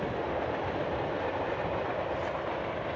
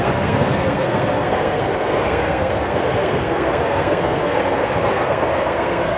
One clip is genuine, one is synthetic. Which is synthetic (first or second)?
second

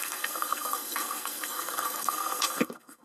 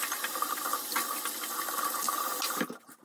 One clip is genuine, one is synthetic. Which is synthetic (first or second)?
first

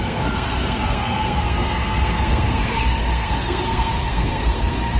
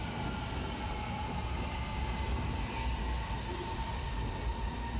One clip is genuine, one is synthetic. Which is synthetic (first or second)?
first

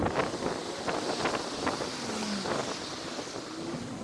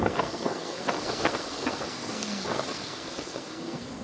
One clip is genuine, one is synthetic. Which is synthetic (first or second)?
second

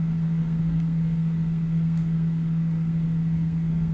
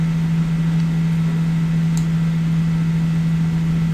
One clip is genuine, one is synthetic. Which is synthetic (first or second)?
first